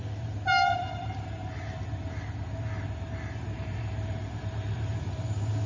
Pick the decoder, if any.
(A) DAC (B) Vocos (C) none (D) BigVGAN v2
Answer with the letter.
D